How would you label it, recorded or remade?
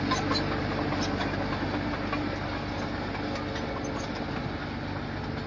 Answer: recorded